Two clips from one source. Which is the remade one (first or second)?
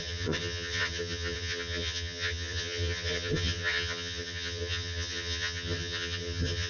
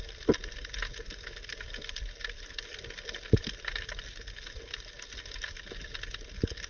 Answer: first